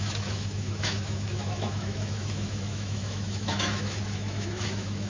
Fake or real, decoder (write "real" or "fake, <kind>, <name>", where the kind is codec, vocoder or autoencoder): fake, autoencoder, DAC-VAE